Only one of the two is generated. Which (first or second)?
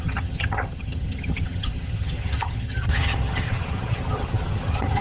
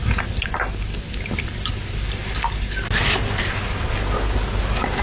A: first